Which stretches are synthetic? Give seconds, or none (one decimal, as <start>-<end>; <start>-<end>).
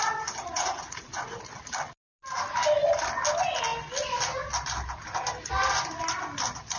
0.4-1.4